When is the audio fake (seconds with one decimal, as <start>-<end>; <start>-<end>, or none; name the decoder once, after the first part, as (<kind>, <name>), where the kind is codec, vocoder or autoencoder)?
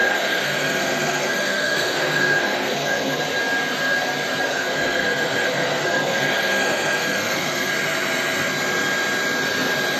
0.0-3.2 (codec, SNAC); 4.5-7.7